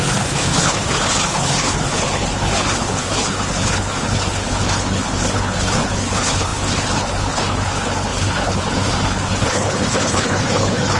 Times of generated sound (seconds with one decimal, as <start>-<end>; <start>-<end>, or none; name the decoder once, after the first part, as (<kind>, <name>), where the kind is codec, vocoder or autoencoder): 0.0-11.0 (codec, HILCodec)